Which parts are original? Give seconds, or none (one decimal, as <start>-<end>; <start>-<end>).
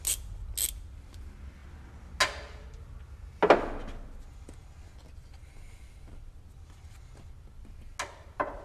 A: 0.0-8.6